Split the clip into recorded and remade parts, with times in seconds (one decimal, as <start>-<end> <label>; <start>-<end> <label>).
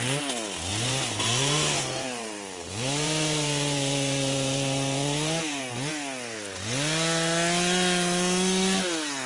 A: 0.0-0.7 recorded; 0.7-5.6 remade; 5.6-9.3 recorded